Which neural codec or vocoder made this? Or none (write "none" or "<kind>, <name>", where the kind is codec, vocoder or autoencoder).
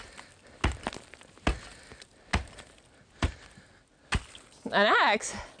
none